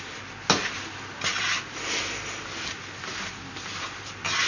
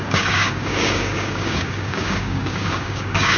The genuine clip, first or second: first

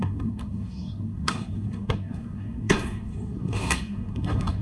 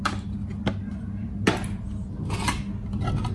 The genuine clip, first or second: second